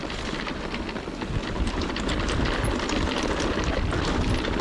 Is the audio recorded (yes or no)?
yes